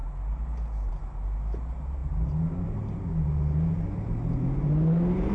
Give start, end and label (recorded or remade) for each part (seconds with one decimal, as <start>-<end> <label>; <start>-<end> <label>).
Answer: 0.0-5.3 recorded